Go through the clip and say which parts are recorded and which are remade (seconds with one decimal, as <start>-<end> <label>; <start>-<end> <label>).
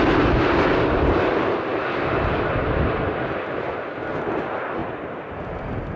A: 0.0-6.0 recorded